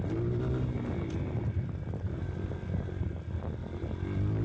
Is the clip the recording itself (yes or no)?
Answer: yes